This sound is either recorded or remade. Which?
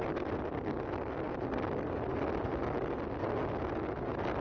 recorded